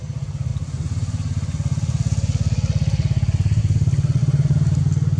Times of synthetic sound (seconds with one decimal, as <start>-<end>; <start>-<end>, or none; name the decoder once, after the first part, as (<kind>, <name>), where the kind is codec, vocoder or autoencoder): 4.2-4.8 (vocoder, BigVGAN v2)